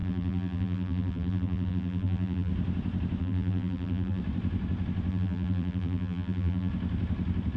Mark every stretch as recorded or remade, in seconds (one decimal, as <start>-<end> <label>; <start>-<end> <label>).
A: 0.0-2.5 remade; 2.5-3.2 recorded; 3.2-4.2 remade; 4.2-5.1 recorded; 5.1-6.7 remade; 6.7-7.6 recorded